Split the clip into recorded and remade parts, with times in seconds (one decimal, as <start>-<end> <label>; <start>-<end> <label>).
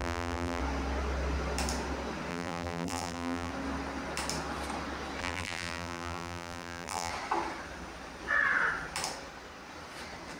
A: 0.0-0.6 remade; 0.6-2.3 recorded; 2.3-3.5 remade; 3.5-5.2 recorded; 5.2-7.1 remade; 7.1-10.4 recorded